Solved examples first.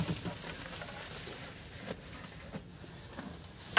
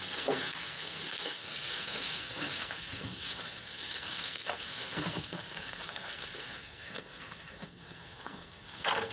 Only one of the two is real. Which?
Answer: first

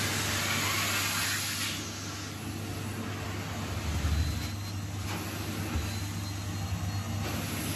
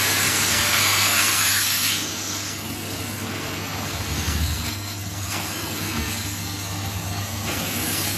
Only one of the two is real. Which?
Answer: first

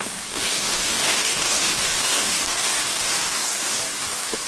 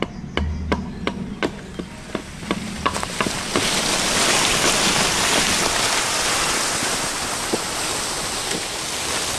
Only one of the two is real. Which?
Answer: second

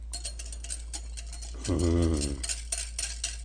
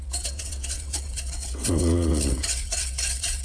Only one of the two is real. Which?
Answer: first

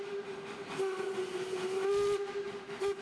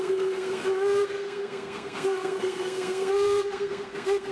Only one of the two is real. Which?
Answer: first